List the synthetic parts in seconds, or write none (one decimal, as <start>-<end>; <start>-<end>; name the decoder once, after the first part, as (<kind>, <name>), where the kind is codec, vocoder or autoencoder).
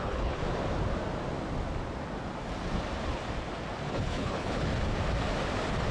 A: 0.0-0.4 (codec, HILCodec); 3.9-4.7